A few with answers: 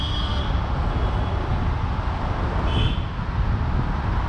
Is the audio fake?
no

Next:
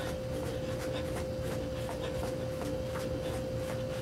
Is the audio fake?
no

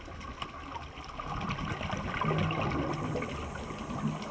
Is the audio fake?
no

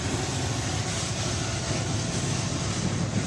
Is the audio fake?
no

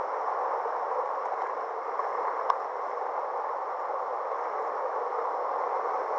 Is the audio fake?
no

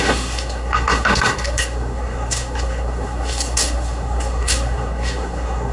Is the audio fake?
yes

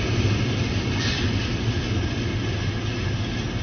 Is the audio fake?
no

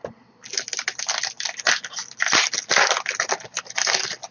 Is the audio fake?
no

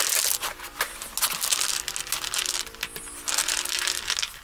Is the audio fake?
no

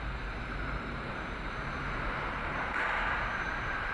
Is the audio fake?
yes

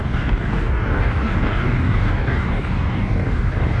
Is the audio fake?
yes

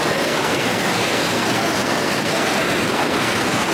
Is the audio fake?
yes